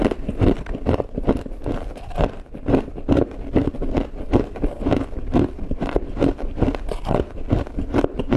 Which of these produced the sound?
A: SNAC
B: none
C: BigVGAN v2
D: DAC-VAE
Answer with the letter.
B